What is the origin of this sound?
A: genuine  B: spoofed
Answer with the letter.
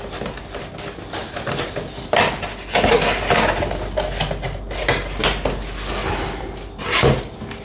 A